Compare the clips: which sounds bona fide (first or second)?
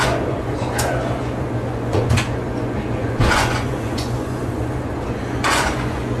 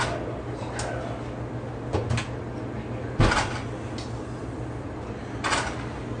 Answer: second